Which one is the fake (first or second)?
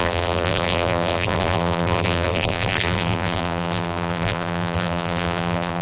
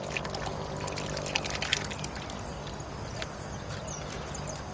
first